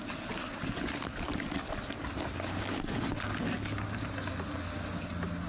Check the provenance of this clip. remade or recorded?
recorded